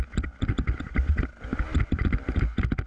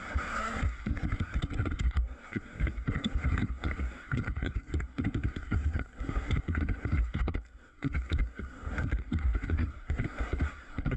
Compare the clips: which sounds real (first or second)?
first